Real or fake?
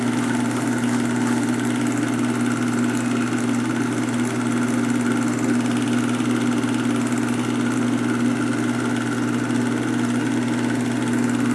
real